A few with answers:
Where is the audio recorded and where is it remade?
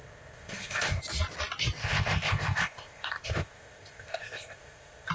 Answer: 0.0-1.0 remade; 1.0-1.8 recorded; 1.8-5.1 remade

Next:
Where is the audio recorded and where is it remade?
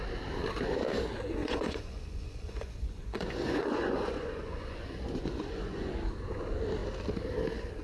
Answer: 0.0-1.4 recorded; 1.4-5.9 remade; 5.9-7.8 recorded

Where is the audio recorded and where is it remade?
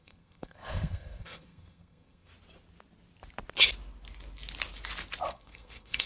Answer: 0.0-2.3 remade; 2.3-5.3 recorded; 5.3-6.1 remade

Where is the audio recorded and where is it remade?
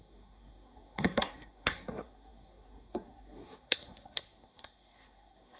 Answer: 0.0-5.6 remade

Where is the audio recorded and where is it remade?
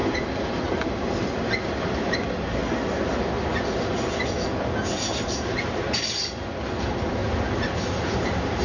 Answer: 0.0-2.6 remade; 2.6-6.6 recorded; 6.6-7.2 remade; 7.2-8.0 recorded; 8.0-8.6 remade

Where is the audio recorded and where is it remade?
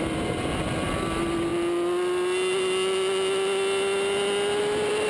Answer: 0.0-1.5 remade; 1.5-4.6 recorded; 4.6-5.1 remade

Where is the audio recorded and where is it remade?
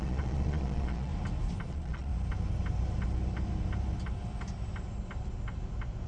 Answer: 0.0-1.1 remade; 1.1-1.7 recorded; 1.7-2.1 remade; 2.1-6.1 recorded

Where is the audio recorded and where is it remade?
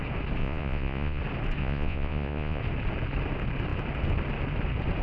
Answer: 0.0-0.4 recorded; 0.4-1.2 remade; 1.2-1.6 recorded; 1.6-2.6 remade; 2.6-5.0 recorded